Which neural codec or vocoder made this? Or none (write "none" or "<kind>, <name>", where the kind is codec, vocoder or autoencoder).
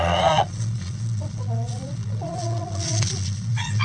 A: vocoder, Vocos